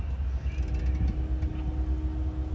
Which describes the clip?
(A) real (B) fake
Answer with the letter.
A